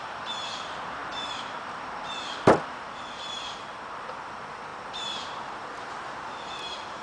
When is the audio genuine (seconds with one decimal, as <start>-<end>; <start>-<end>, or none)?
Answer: none